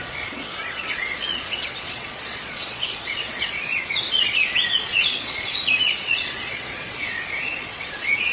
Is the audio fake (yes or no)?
yes